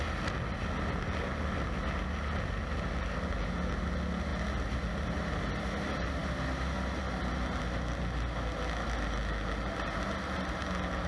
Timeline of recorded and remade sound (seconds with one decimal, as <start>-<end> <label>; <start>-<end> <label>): 0.0-11.1 recorded